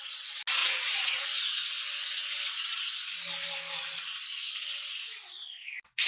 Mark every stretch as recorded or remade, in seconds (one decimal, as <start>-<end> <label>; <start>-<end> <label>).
0.0-0.6 recorded; 0.6-1.2 remade; 1.2-6.1 recorded